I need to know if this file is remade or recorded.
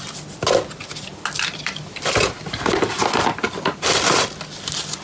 recorded